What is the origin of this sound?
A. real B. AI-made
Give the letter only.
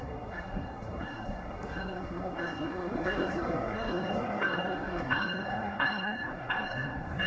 B